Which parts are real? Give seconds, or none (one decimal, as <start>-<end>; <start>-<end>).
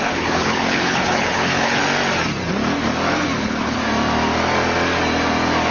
1.8-3.4; 3.8-5.7